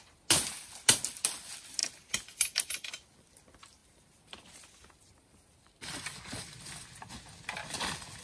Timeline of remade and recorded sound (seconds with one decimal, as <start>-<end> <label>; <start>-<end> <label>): 0.0-8.2 recorded